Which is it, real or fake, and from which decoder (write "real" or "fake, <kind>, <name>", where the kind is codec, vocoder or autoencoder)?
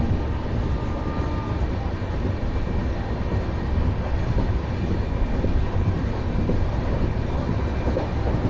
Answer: real